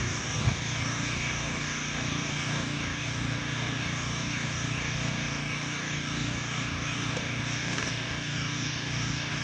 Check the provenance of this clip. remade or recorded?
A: remade